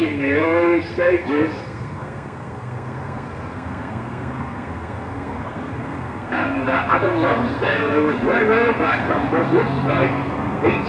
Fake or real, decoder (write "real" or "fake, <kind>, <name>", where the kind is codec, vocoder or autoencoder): fake, codec, SNAC